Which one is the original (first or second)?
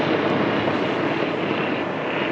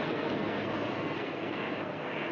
first